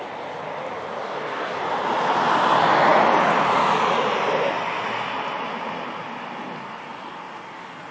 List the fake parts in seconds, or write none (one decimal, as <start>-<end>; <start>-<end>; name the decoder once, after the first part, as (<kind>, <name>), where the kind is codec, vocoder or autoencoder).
1.0-1.6 (codec, DAC)